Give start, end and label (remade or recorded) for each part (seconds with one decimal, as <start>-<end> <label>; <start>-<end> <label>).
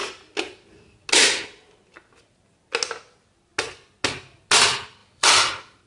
0.0-5.0 recorded; 5.0-5.9 remade